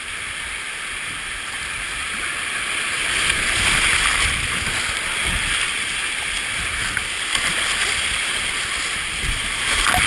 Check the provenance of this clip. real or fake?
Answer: real